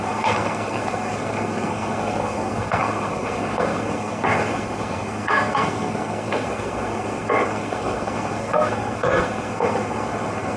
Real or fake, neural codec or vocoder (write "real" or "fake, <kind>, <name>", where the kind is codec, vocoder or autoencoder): fake, codec, SNAC